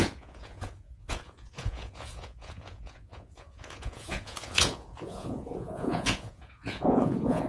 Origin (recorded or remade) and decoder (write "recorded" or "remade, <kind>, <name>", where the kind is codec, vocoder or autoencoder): remade, vocoder, Vocos